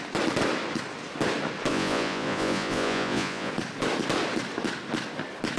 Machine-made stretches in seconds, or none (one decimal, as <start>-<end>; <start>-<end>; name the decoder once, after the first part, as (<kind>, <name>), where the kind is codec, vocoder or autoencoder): 1.7-3.5 (vocoder, Vocos)